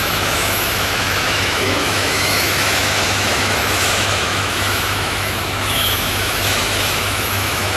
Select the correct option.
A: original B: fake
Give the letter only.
B